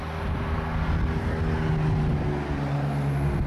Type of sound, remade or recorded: recorded